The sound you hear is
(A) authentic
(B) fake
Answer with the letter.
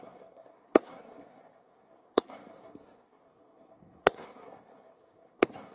B